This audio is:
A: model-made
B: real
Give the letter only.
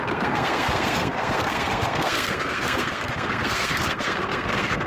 A